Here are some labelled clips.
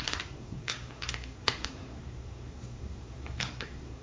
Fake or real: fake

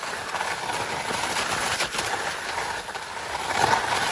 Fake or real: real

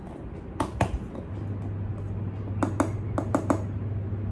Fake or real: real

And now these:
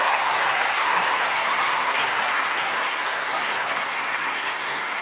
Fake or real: fake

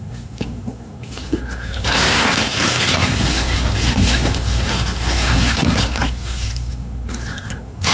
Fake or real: fake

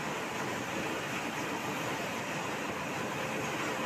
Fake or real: real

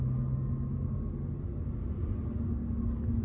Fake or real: real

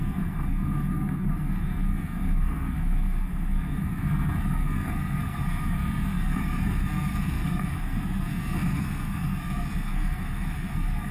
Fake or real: fake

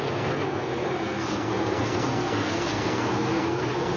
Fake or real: fake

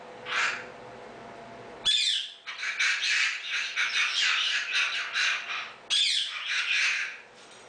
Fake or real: real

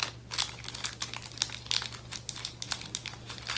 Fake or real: real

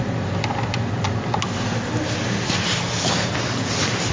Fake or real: real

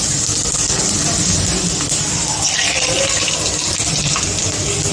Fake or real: real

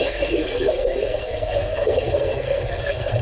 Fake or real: fake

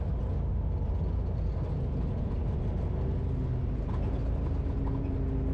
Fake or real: real